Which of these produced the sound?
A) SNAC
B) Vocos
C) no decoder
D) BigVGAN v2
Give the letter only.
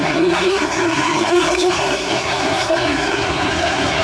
A